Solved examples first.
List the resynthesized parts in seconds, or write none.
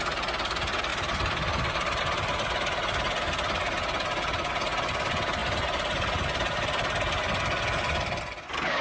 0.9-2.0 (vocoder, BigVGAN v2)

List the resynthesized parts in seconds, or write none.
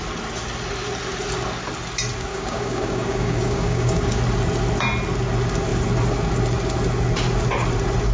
2.3-4.2 (codec, DAC)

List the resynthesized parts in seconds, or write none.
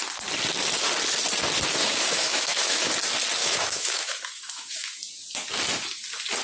1.8-2.9 (autoencoder, DAC-VAE); 3.4-5.0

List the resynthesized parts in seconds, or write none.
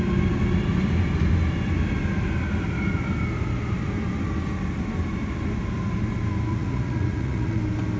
6.5-7.6 (vocoder, Vocos)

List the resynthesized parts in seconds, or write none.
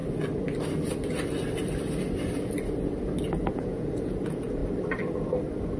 3.5-4.6 (vocoder, Vocos)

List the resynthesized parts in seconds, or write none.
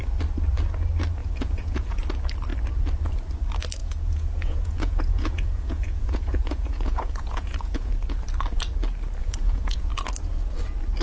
1.2-2.0 (vocoder, Vocos); 3.8-7.9; 9.2-9.9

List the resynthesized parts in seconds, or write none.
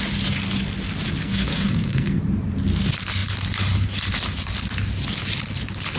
1.2-2.2 (codec, SNAC)